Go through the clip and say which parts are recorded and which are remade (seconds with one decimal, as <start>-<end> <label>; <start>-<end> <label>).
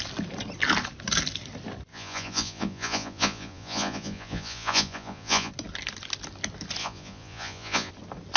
0.0-1.9 recorded; 1.9-5.5 remade; 5.5-6.8 recorded; 6.8-7.9 remade; 7.9-8.4 recorded